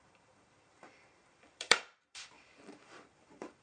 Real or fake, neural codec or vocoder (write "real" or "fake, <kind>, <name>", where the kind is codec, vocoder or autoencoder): fake, vocoder, BigVGAN v2